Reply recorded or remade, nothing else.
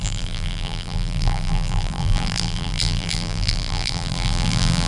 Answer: remade